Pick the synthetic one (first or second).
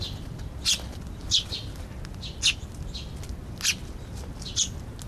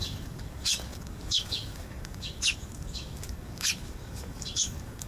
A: second